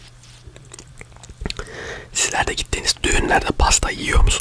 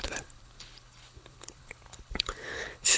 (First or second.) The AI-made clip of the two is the second